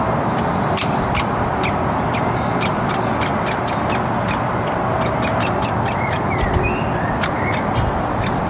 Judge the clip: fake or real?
real